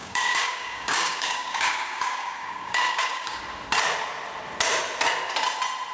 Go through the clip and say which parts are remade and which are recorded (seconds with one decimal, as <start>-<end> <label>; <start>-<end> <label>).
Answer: 0.0-3.4 remade; 3.4-5.9 recorded